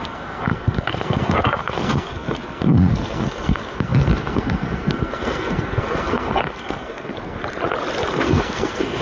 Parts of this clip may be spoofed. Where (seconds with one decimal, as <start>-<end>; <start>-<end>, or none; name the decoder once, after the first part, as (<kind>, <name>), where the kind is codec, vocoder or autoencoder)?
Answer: 0.0-7.4 (codec, SNAC); 8.1-9.0